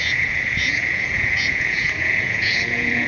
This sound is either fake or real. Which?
fake